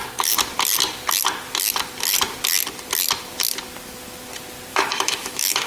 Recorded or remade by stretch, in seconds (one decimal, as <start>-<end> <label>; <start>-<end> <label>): 0.0-4.7 recorded; 4.7-5.7 remade